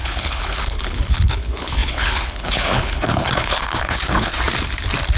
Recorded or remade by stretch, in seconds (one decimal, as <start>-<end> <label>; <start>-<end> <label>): 0.0-4.3 remade; 4.3-5.2 recorded